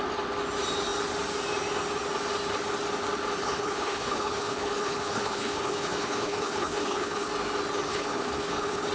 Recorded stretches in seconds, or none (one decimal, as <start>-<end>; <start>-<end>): 0.0-3.4; 7.3-7.9